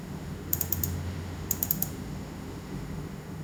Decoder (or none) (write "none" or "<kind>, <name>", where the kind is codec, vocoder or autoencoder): autoencoder, DAC-VAE